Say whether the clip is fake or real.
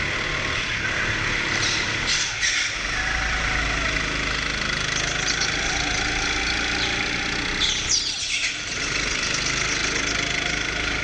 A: real